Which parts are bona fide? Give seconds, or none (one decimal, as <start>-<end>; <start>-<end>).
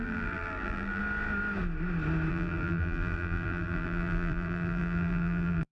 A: 1.0-2.3